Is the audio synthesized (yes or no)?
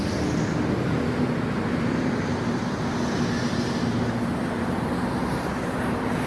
no